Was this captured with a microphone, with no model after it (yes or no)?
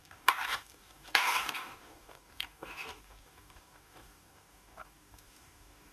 no